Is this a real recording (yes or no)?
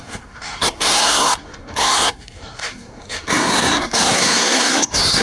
no